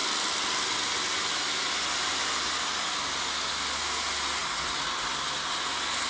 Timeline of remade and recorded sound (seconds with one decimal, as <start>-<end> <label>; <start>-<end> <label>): 0.0-6.1 recorded